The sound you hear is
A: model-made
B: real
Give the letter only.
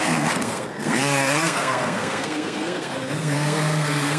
A